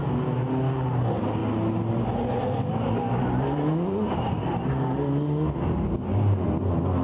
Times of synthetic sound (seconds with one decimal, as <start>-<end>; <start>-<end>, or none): none